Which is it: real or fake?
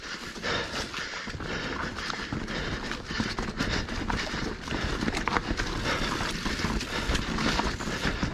real